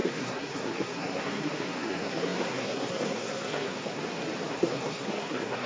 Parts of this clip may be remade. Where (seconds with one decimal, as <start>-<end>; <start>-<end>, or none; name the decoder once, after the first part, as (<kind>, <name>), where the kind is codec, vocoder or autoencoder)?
0.0-4.0 (codec, SNAC); 4.5-5.7

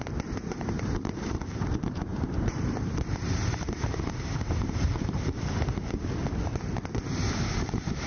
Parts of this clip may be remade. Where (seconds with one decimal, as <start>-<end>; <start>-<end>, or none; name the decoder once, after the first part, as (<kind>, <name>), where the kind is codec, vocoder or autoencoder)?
0.0-6.2 (vocoder, BigVGAN v2); 7.0-8.1

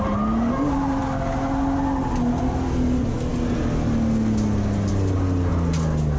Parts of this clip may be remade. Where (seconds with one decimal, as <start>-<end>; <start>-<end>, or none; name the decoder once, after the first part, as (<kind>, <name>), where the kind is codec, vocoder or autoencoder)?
none

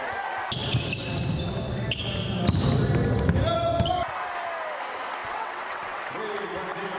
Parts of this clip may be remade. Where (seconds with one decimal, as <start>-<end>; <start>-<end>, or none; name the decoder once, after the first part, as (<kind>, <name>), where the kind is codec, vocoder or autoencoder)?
5.2-6.2 (vocoder, WaveNeXt)

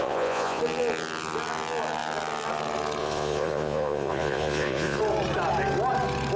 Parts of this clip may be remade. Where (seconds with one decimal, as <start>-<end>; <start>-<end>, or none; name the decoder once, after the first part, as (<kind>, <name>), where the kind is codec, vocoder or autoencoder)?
0.0-0.6 (vocoder, Vocos); 3.0-5.0

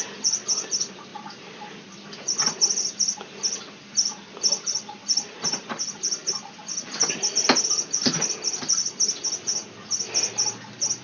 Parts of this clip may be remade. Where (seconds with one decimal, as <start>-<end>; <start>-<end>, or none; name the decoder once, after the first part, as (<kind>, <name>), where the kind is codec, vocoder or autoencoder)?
1.1-1.8 (vocoder, BigVGAN v2); 6.2-7.2